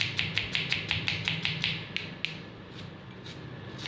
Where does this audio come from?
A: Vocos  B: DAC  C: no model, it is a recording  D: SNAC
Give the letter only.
C